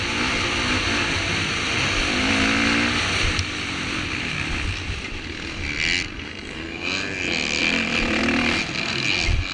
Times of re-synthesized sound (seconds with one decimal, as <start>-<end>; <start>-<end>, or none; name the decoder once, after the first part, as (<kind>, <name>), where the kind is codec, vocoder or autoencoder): none